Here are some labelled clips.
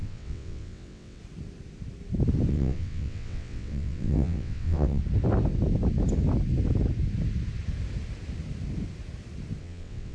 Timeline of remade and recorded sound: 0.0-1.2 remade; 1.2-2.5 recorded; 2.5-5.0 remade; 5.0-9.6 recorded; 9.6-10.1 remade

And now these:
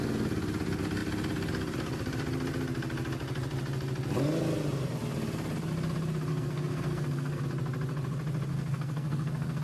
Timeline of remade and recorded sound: 0.0-6.3 recorded; 6.3-7.4 remade; 7.4-8.5 recorded; 8.5-9.6 remade